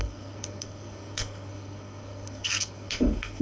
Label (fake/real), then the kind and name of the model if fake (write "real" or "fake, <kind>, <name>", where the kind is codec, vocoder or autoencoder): fake, codec, SNAC